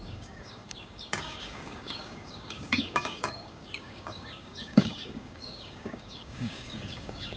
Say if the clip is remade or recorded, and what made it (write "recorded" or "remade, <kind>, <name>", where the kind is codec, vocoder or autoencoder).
remade, codec, DAC